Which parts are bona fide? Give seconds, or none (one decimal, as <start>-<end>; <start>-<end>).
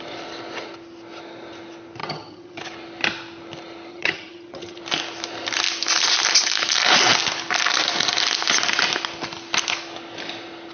0.0-2.0; 2.6-3.9; 4.8-10.7